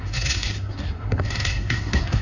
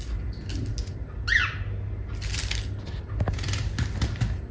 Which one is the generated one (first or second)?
first